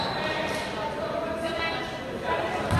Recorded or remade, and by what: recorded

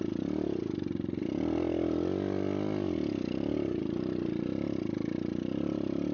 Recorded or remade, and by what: recorded